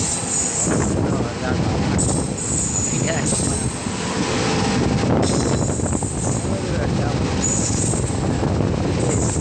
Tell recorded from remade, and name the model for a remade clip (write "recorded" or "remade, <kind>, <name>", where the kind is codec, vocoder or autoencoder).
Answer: recorded